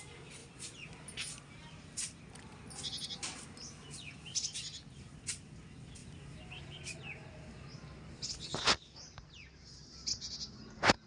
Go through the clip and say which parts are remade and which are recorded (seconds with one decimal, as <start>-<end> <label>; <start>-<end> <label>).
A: 0.0-11.1 recorded